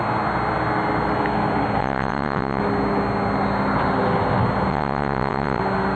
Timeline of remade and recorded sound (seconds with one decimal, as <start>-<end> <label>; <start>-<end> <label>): 0.0-1.8 recorded; 1.8-2.6 remade; 2.6-4.7 recorded; 4.7-5.6 remade; 5.6-6.0 recorded